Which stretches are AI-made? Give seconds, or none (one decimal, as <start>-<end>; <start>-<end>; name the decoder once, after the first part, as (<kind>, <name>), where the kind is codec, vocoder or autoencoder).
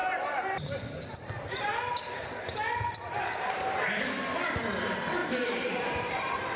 0.0-4.0 (vocoder, BigVGAN v2); 5.2-6.6